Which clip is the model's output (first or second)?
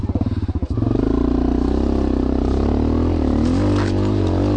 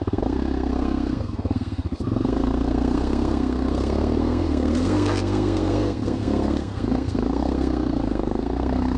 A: second